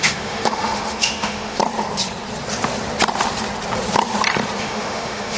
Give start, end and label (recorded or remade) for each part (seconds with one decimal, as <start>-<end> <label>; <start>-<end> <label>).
0.0-1.6 remade; 1.6-4.6 recorded; 4.6-5.4 remade